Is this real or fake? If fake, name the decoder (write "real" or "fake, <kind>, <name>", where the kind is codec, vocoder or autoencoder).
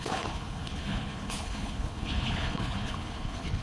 fake, codec, HILCodec